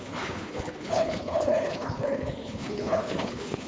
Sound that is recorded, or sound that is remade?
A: remade